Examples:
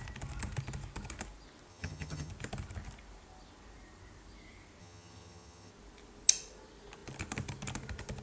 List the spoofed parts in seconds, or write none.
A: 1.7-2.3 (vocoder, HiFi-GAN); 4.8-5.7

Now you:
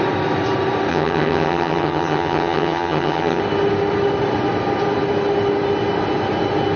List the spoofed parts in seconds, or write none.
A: 0.9-3.4 (vocoder, HiFi-GAN)